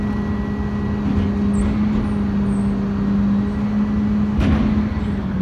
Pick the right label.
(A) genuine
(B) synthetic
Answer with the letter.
A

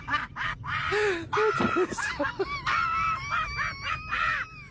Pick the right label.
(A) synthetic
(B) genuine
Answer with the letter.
B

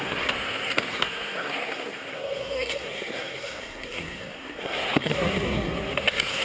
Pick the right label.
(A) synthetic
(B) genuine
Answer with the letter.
A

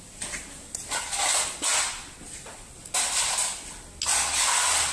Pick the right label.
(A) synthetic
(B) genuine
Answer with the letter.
B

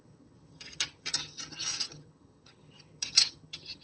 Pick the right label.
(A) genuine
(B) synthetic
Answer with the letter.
B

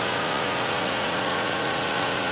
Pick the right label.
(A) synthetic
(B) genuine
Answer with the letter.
A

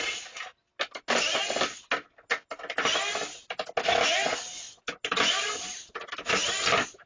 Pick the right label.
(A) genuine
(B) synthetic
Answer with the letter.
A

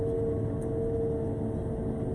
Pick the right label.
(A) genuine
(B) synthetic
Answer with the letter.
A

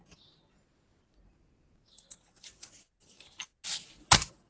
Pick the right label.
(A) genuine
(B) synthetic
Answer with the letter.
A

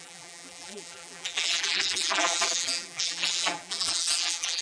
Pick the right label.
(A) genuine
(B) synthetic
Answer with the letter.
B